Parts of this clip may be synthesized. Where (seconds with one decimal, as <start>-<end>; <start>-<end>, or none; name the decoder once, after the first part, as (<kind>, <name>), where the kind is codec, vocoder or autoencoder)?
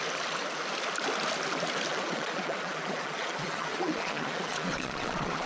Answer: 1.9-5.5 (vocoder, Vocos)